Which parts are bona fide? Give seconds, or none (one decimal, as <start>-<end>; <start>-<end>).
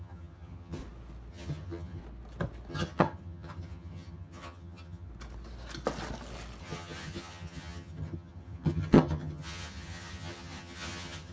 0.8-1.3; 2.0-2.7; 5.1-6.6